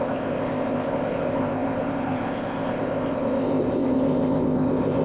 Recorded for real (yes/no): no